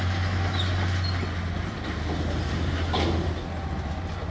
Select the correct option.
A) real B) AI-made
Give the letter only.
A